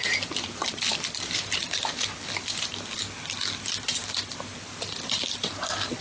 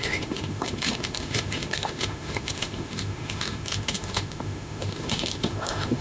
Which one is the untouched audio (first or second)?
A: first